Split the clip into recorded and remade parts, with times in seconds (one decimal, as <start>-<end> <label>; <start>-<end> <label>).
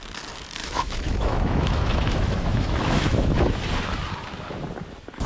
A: 0.0-0.6 recorded; 0.6-3.6 remade; 3.6-5.3 recorded